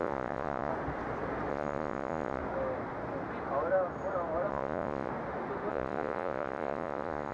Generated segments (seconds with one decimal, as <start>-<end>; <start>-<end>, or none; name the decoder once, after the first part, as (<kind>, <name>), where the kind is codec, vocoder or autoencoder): 0.0-0.7 (vocoder, Vocos); 1.5-2.4; 4.5-5.1; 5.7-7.3